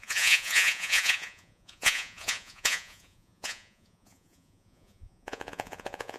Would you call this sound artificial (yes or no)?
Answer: yes